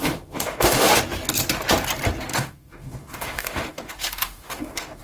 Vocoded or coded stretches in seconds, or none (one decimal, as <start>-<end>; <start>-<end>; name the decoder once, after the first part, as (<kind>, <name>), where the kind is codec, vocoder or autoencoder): 0.0-1.0 (autoencoder, DAC-VAE); 2.3-5.0